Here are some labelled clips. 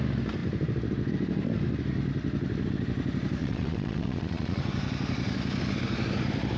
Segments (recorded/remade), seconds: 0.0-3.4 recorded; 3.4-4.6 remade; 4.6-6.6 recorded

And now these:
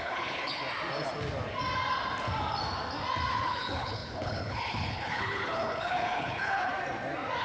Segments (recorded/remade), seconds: 0.0-0.6 remade; 0.6-3.3 recorded; 3.3-6.7 remade; 6.7-7.4 recorded

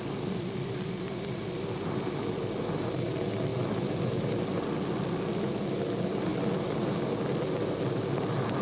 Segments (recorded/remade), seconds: 0.0-8.6 recorded

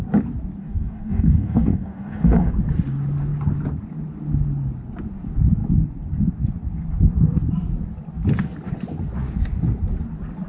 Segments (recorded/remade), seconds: 0.0-0.6 recorded; 0.6-2.5 remade; 2.5-10.5 recorded

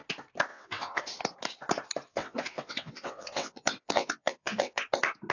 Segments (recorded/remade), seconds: 0.0-0.5 recorded; 0.5-1.0 remade; 1.0-2.1 recorded; 2.1-4.8 remade; 4.8-5.3 recorded

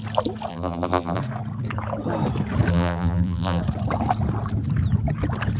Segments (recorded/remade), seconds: 0.0-0.5 recorded; 0.5-1.2 remade; 1.2-2.7 recorded; 2.7-3.6 remade; 3.6-5.6 recorded

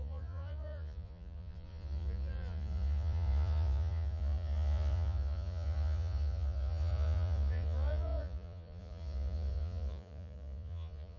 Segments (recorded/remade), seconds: 0.0-11.2 remade

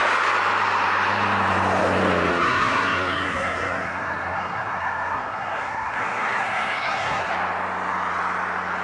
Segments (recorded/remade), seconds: 0.0-2.3 recorded; 2.3-7.3 remade; 7.3-8.8 recorded